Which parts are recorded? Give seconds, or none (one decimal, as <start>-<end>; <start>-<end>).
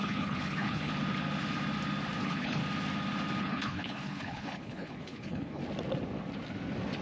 0.9-2.2; 2.6-3.4; 5.6-7.0